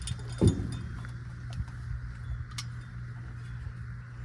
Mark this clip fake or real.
real